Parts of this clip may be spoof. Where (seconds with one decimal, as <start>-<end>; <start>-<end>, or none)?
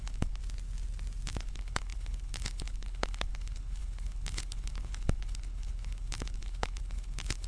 0.0-0.4; 1.4-7.5